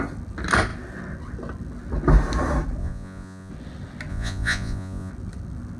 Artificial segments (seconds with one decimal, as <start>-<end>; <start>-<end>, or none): 2.8-3.5; 4.1-5.1